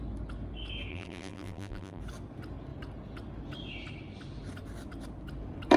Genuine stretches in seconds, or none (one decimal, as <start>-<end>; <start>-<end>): 0.0-0.9; 2.0-5.8